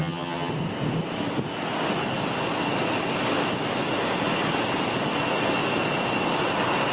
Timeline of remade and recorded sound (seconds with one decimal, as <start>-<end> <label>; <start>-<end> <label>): 0.0-0.5 remade; 0.5-6.9 recorded